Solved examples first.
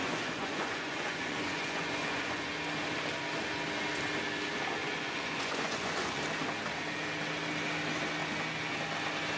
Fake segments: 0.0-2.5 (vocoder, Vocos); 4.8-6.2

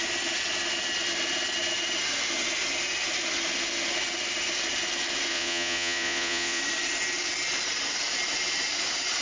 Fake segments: 5.3-6.6 (vocoder, Vocos)

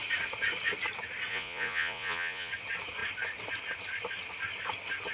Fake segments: 1.3-2.5 (vocoder, Vocos)